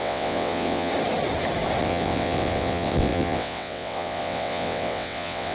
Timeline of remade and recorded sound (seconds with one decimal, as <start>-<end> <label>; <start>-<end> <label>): 0.0-0.9 remade; 0.9-1.8 recorded; 1.8-5.5 remade

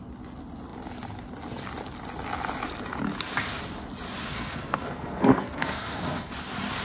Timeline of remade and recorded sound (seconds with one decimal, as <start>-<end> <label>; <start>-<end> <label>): 0.0-4.3 recorded; 4.3-6.3 remade; 6.3-6.8 recorded